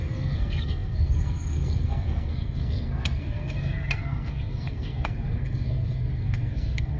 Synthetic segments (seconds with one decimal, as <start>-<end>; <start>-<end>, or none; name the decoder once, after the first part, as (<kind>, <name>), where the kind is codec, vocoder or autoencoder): 0.0-7.0 (codec, SNAC)